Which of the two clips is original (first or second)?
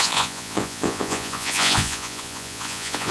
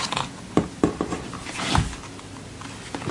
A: second